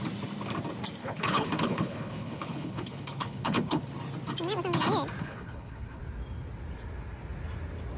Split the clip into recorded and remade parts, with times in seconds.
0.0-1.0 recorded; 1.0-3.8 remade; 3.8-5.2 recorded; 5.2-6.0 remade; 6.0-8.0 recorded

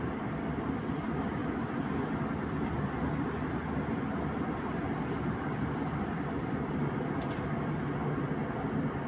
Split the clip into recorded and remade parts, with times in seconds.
0.0-1.4 recorded; 1.4-3.1 remade; 3.1-9.1 recorded

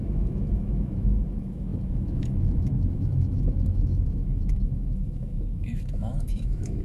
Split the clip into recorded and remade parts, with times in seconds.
0.0-6.8 remade

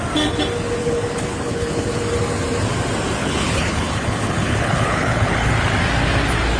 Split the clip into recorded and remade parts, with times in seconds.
0.0-0.8 recorded; 0.8-2.0 remade; 2.0-3.2 recorded; 3.2-5.5 remade; 5.5-6.6 recorded

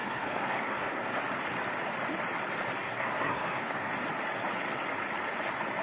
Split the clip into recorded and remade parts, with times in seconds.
0.0-1.2 remade; 1.2-2.8 recorded; 2.8-3.9 remade; 3.9-5.8 recorded

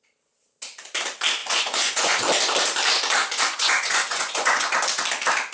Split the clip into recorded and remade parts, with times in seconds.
0.0-1.4 recorded; 1.4-2.2 remade; 2.2-3.2 recorded; 3.2-4.8 remade; 4.8-5.5 recorded

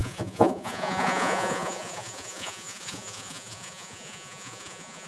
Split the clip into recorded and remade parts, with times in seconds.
0.0-5.1 remade

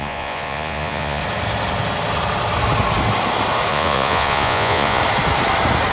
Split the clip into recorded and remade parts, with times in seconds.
0.0-1.2 remade; 1.2-3.7 recorded; 3.7-5.0 remade; 5.0-5.9 recorded